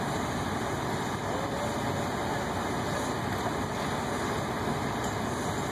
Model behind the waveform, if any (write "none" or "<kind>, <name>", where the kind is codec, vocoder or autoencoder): none